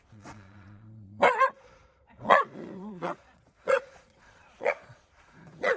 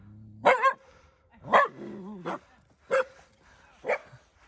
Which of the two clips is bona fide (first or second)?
second